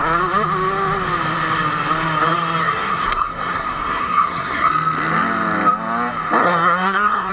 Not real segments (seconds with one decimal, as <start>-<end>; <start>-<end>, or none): 2.6-4.7; 6.4-7.3